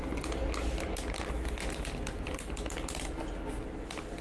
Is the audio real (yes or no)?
yes